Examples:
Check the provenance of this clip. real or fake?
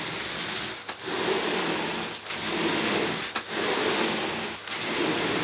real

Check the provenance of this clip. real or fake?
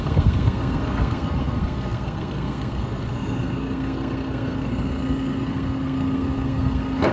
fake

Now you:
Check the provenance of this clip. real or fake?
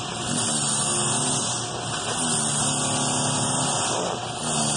real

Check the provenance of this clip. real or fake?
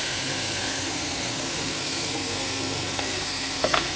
fake